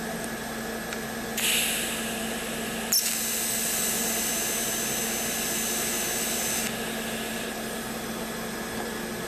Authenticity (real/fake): real